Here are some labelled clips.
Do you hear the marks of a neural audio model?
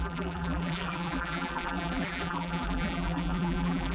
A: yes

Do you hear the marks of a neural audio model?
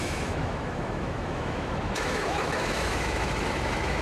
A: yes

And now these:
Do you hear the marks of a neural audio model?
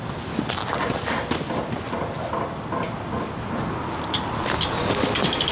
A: no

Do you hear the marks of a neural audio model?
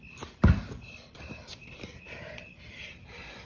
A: no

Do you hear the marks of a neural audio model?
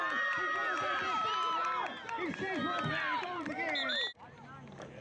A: no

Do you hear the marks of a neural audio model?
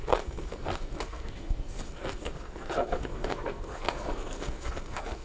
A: yes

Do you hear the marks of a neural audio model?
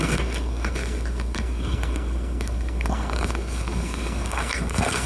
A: yes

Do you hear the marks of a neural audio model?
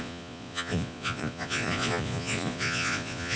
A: yes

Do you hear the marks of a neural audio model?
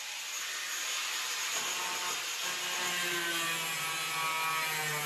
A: no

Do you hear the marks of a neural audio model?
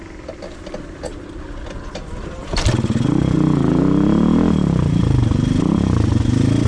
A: no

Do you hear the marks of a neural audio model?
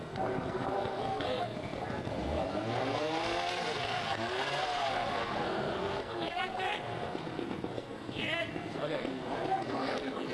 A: yes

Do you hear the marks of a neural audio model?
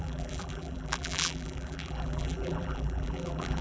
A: yes